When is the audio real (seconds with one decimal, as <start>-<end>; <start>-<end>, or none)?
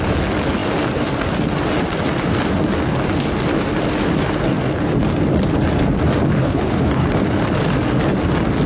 0.0-6.3; 7.1-8.7